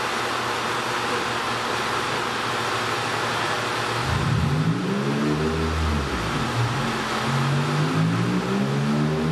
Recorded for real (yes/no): yes